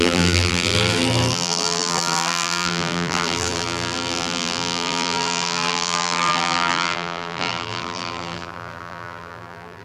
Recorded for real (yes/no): no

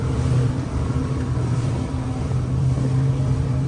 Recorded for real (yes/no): no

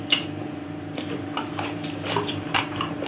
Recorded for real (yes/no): no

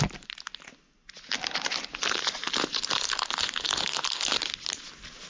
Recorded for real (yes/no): yes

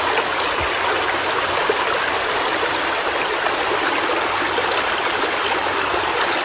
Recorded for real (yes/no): yes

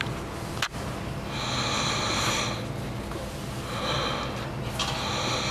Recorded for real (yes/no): yes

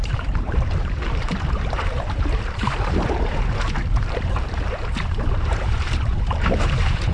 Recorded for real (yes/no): no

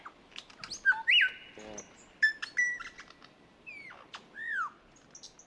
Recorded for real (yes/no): yes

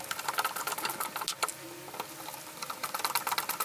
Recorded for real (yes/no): yes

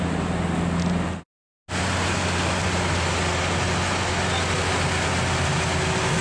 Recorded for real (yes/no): yes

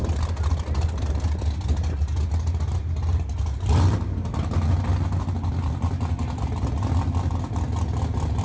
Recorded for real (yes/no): yes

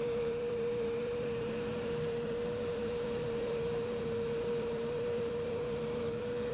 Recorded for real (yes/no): no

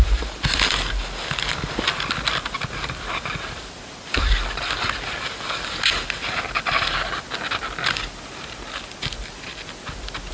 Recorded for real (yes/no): yes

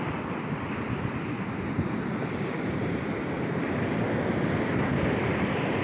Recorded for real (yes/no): yes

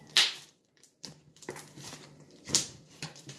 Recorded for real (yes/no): no